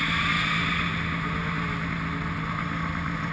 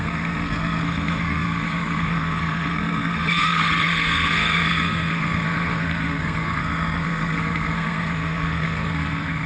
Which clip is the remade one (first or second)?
second